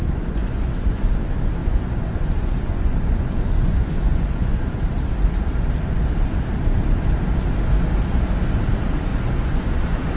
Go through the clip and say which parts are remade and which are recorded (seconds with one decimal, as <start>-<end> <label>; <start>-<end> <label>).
0.0-1.1 remade; 1.1-1.6 recorded; 1.6-4.8 remade; 4.8-9.1 recorded; 9.1-10.2 remade